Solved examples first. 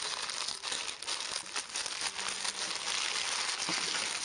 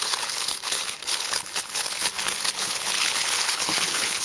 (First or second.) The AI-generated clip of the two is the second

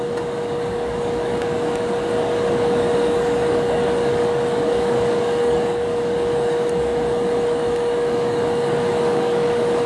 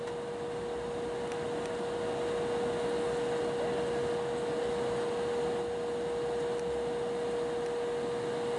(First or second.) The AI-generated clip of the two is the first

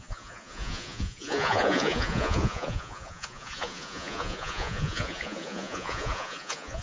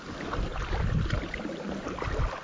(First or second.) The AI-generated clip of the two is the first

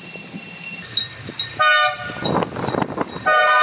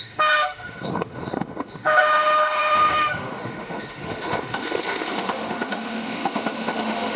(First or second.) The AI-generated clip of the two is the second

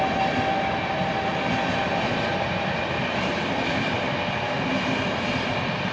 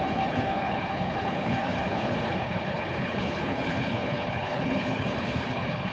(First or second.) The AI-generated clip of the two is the second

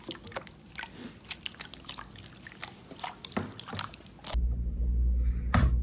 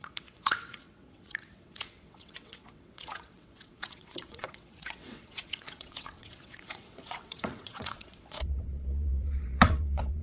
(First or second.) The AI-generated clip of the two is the second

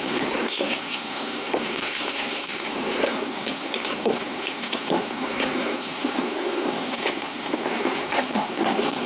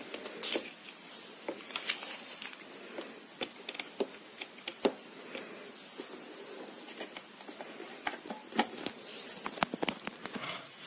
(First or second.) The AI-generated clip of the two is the first